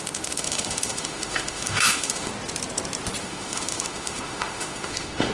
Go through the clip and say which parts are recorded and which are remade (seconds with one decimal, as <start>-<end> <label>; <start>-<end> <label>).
0.0-2.3 remade; 2.3-3.2 recorded; 3.2-5.3 remade

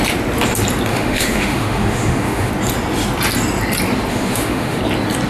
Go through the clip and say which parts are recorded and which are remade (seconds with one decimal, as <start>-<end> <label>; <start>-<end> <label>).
0.0-0.9 recorded; 0.9-2.5 remade; 2.5-4.1 recorded; 4.1-4.8 remade; 4.8-5.3 recorded